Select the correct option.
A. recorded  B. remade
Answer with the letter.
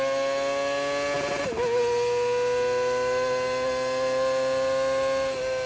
A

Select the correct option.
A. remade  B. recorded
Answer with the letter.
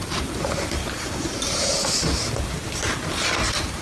B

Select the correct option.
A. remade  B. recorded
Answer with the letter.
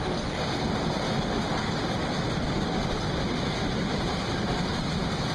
B